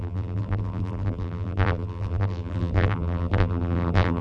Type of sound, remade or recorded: remade